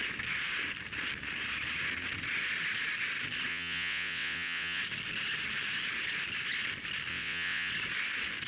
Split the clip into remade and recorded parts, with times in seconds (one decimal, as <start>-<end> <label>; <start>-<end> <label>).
0.0-3.5 recorded; 3.5-4.8 remade; 4.8-7.1 recorded; 7.1-7.7 remade; 7.7-8.5 recorded